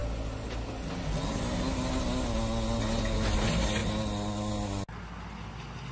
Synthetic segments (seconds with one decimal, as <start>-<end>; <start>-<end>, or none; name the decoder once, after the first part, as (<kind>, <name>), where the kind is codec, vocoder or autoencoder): none